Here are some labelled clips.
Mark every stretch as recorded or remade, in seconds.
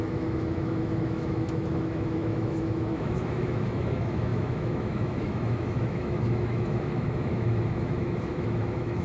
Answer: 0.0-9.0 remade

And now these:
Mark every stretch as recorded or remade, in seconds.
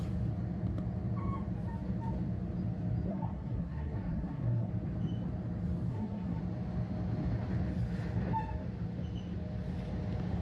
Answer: 0.0-3.1 recorded; 3.1-4.7 remade; 4.7-5.9 recorded; 5.9-6.4 remade; 6.4-10.4 recorded